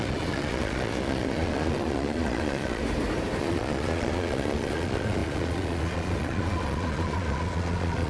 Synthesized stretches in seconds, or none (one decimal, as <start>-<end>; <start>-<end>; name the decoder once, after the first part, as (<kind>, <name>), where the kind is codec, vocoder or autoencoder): 0.0-2.8 (vocoder, Vocos); 3.4-8.1